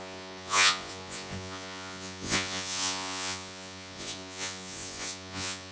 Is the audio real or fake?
fake